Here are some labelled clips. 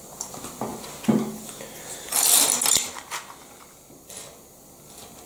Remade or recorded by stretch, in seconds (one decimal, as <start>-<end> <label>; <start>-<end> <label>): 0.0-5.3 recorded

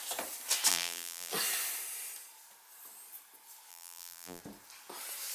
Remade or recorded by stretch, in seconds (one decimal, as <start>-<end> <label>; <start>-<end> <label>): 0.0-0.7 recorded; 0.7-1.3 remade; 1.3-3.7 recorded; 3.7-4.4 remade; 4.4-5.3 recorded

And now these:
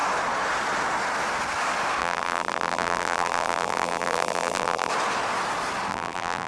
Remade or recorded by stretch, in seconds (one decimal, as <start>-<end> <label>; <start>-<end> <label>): 0.0-2.0 recorded; 2.0-4.9 remade; 4.9-5.9 recorded; 5.9-6.5 remade

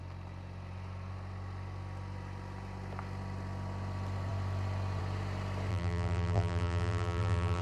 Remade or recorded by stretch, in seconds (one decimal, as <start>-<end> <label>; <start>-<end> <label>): 0.0-5.7 recorded; 5.7-7.6 remade

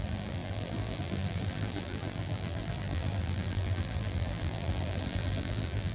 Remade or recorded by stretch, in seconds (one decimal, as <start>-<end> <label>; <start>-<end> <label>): 0.0-5.9 remade

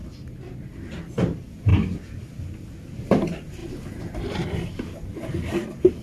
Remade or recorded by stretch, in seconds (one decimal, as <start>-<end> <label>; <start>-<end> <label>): 0.0-6.0 recorded